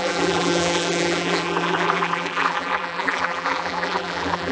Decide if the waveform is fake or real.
fake